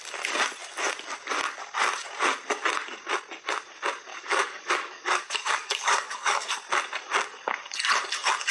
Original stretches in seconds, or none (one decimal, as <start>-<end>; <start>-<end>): 0.0-4.1; 6.5-8.5

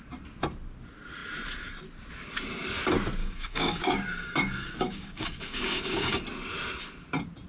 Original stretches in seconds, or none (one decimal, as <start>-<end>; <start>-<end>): 0.0-3.2; 6.2-7.5

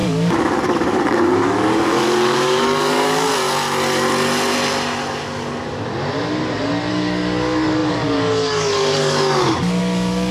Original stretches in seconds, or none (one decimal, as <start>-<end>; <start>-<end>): 3.3-6.9